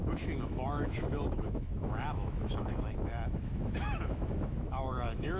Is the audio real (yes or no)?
no